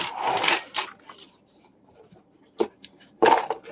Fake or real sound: fake